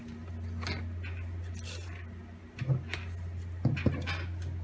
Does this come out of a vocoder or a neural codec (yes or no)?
no